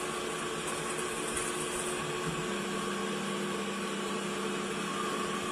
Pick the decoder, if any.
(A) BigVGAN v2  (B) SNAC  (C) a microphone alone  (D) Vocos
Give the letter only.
C